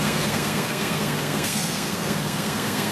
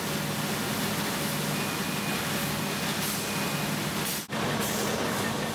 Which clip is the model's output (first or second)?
first